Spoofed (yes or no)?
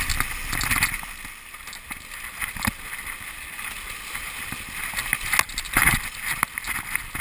no